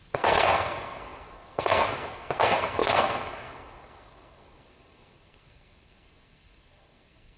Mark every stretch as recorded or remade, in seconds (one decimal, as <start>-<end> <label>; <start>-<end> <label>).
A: 0.0-7.4 remade